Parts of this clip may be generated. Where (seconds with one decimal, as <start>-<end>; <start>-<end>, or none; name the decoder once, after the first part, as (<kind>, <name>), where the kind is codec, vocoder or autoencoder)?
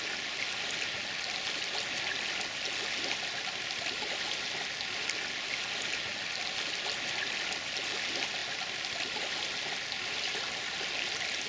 none